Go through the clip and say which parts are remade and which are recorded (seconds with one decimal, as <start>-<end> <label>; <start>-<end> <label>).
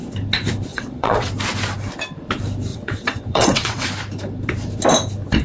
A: 0.0-0.7 recorded; 0.7-1.3 remade; 1.3-2.7 recorded; 2.7-3.9 remade; 3.9-5.4 recorded